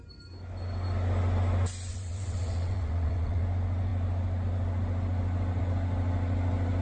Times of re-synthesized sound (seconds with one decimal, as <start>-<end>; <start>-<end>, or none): 1.9-3.4